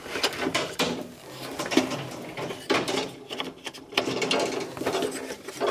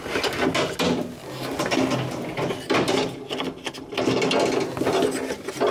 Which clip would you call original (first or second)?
second